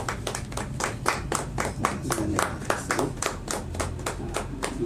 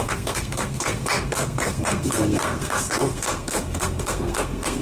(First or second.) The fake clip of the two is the second